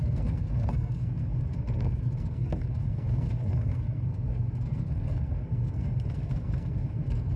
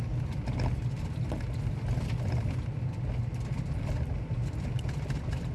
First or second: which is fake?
first